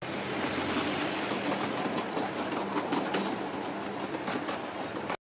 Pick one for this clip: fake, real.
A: real